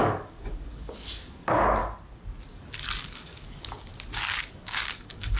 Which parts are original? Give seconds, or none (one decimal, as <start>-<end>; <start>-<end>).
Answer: 1.8-2.5; 3.9-4.4